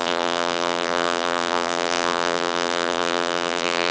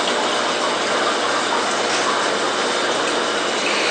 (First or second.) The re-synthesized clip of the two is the first